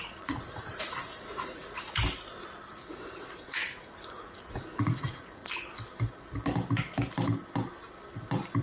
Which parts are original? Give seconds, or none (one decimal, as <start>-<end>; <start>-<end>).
2.0-2.7; 5.4-8.6